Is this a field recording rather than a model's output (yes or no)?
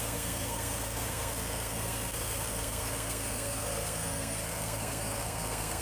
no